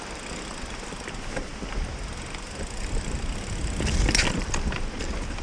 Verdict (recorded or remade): remade